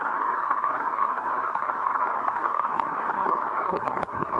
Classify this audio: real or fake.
fake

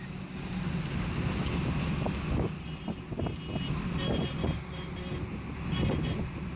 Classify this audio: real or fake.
real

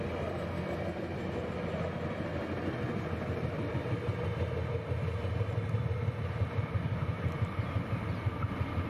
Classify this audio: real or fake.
real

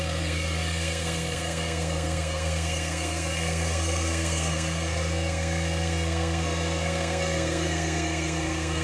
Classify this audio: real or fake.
fake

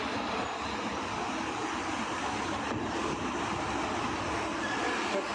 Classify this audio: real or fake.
real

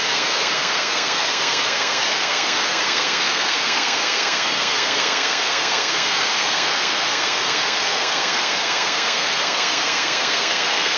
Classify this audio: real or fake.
fake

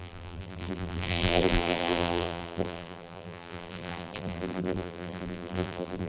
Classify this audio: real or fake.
fake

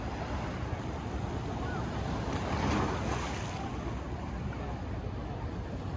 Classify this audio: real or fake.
real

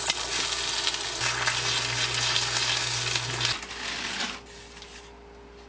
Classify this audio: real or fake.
real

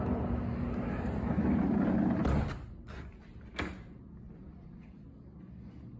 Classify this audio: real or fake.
real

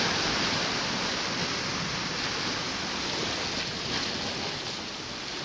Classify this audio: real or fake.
real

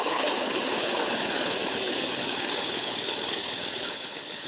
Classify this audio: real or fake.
fake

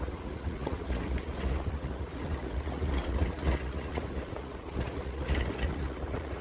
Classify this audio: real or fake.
fake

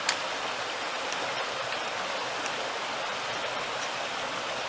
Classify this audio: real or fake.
real